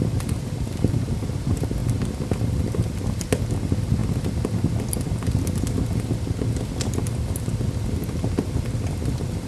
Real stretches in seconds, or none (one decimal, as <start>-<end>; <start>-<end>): 0.0-9.5